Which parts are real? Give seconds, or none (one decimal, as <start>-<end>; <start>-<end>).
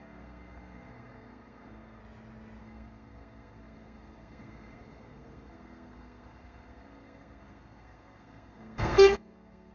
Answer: 2.0-2.6